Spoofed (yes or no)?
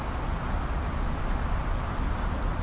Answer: no